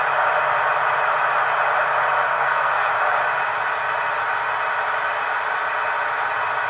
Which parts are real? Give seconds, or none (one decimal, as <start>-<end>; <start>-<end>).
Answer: 0.0-2.2; 2.9-6.7